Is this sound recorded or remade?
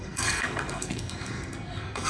remade